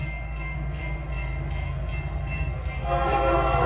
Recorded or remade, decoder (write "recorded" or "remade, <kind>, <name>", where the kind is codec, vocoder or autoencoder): remade, codec, SNAC